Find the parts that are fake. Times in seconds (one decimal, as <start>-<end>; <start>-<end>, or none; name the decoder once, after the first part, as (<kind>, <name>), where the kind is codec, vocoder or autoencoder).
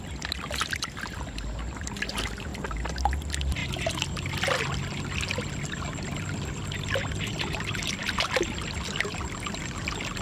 none